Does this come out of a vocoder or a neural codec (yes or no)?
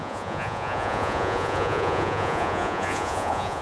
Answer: yes